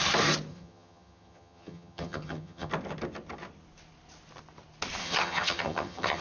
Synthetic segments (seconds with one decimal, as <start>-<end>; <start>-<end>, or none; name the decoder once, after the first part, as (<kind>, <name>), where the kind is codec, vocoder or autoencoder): 0.5-2.7 (vocoder, HiFi-GAN); 5.0-6.2